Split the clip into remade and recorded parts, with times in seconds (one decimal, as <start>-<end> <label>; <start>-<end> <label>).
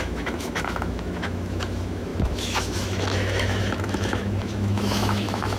0.0-5.6 remade